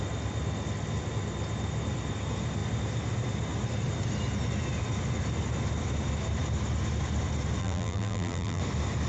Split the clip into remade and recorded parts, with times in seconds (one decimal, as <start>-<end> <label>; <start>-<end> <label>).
0.0-7.6 recorded; 7.6-8.6 remade; 8.6-9.1 recorded